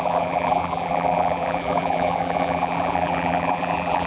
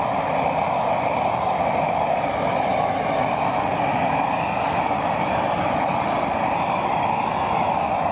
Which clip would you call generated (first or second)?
first